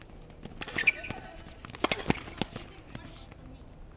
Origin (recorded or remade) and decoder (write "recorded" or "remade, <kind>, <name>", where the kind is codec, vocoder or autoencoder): recorded